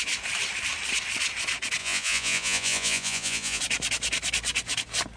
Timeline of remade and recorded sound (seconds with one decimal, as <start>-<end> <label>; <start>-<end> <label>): 0.0-1.8 recorded; 1.8-3.6 remade; 3.6-5.2 recorded